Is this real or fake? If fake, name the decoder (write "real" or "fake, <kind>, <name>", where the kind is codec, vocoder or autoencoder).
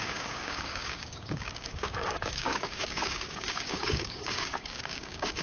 fake, codec, DAC